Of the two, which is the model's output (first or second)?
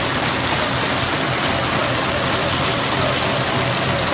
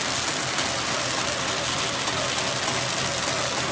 first